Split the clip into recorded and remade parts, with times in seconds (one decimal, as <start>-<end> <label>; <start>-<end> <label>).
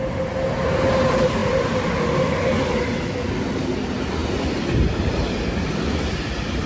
0.0-6.7 recorded